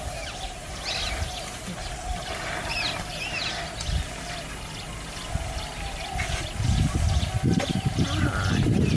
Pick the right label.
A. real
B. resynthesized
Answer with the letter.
A